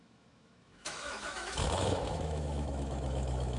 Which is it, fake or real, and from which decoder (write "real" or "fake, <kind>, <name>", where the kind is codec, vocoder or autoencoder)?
fake, autoencoder, DAC-VAE